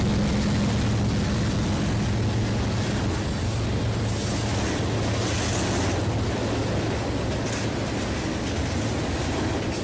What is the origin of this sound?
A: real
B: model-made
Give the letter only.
A